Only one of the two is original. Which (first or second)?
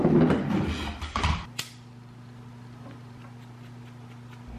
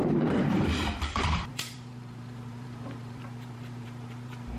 first